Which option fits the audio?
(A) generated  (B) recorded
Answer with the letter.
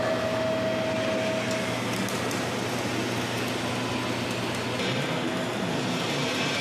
B